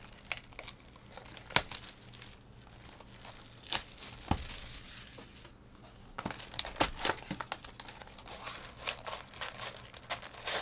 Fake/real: real